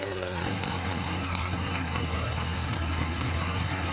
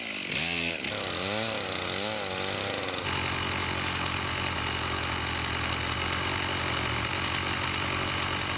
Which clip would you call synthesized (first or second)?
first